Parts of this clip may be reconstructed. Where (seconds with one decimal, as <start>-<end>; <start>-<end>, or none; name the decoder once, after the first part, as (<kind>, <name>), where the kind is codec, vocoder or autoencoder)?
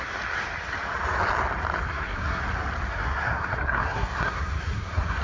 1.9-2.4 (codec, SNAC); 2.9-5.2